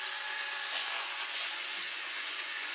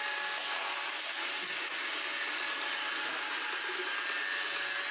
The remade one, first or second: first